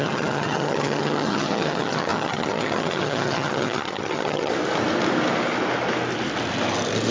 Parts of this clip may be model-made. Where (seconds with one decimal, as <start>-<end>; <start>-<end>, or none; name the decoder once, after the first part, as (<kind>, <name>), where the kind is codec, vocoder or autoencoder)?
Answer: 0.0-4.5 (vocoder, HiFi-GAN)